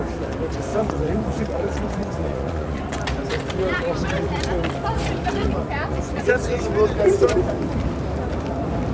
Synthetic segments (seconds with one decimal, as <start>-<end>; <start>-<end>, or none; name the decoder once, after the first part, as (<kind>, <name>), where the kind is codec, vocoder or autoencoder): 0.7-3.0 (vocoder, Vocos); 5.4-6.2